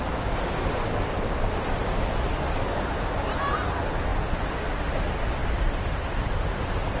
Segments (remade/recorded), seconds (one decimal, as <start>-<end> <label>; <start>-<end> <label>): 0.0-1.8 recorded; 1.8-3.3 remade; 3.3-5.4 recorded; 5.4-7.0 remade